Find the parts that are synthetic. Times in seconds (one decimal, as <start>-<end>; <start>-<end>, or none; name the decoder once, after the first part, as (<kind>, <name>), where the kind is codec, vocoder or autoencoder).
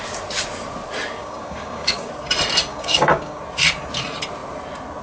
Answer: 1.2-2.1 (codec, DAC); 2.7-3.4